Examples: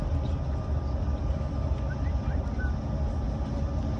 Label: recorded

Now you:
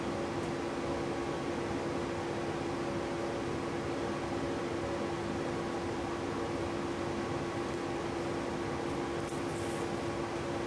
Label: recorded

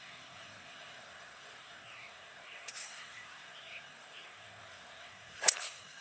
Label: remade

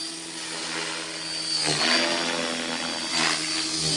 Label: recorded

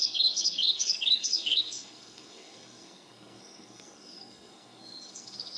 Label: remade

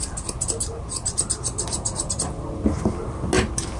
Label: recorded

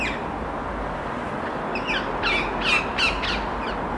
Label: recorded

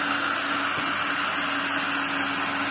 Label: recorded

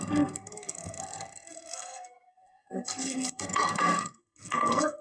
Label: remade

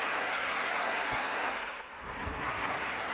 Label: remade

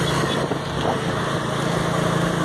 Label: recorded